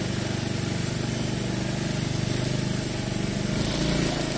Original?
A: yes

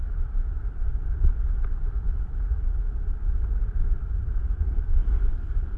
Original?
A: yes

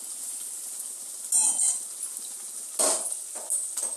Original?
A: yes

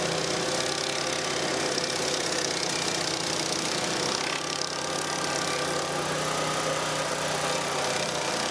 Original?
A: yes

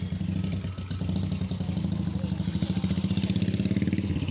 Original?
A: yes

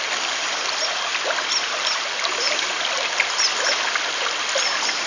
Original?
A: yes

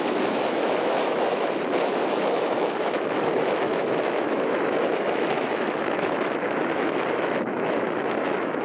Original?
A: no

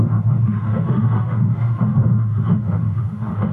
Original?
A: no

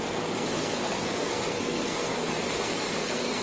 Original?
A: no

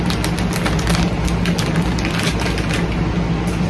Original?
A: yes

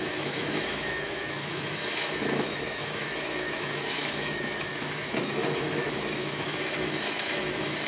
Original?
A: no